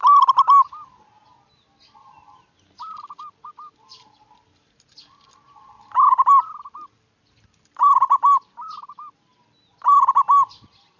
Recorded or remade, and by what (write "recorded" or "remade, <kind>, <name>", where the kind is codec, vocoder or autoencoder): recorded